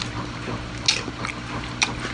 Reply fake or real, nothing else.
real